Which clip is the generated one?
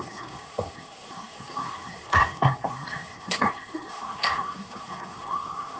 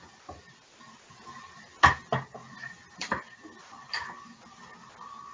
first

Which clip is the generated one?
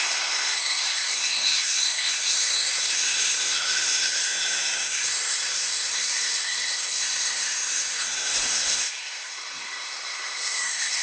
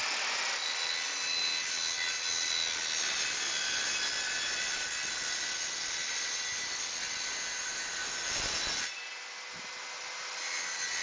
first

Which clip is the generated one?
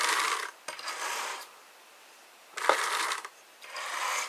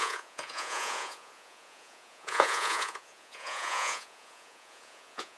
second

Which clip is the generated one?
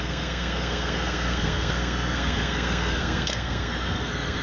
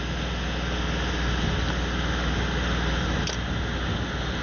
first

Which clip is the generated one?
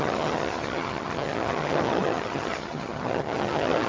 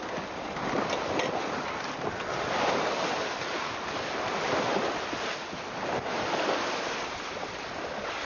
first